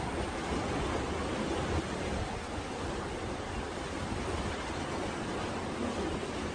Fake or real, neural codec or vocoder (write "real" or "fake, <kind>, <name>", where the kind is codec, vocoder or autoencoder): real